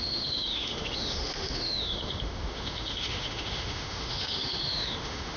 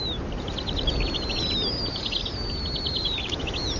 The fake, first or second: first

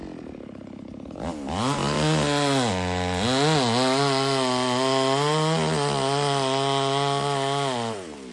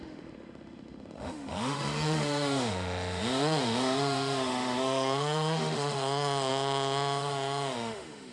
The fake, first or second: second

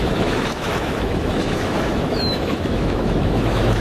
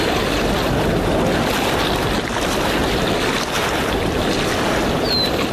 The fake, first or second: first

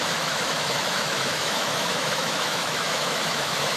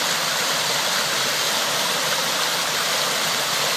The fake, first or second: first